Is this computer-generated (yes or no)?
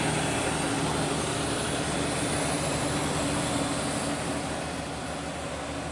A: no